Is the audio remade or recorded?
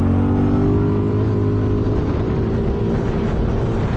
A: recorded